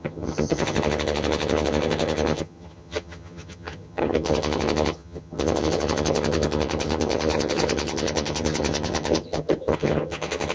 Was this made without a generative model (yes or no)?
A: no